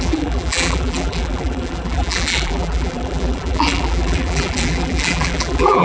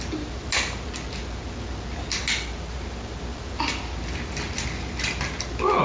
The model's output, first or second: first